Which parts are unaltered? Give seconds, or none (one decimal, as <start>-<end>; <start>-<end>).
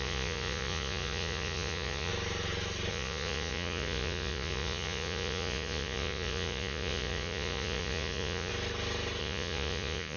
2.1-2.9; 8.5-9.2